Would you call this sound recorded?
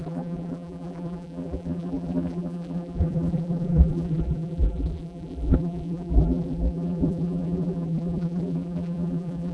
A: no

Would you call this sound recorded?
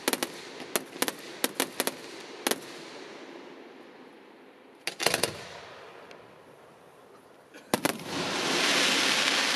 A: yes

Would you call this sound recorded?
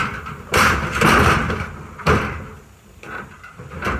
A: no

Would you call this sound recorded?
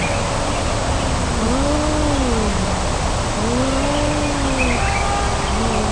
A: yes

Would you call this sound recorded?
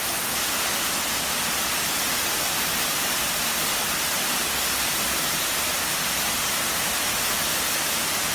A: yes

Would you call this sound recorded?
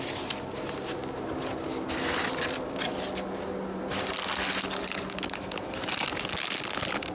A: yes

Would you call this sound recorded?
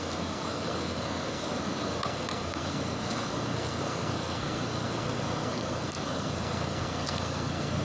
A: no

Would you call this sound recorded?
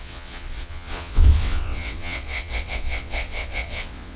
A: no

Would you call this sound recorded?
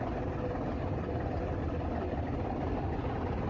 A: yes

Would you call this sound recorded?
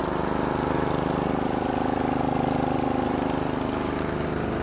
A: yes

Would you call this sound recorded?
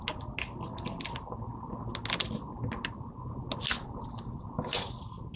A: yes